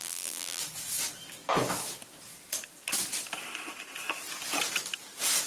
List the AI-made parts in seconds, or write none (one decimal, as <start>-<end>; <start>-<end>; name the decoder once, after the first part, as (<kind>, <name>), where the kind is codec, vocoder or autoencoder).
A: 0.0-0.6 (vocoder, BigVGAN v2)